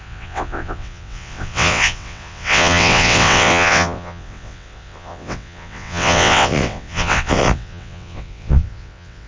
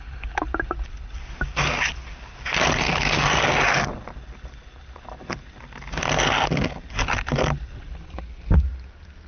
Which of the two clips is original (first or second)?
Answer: second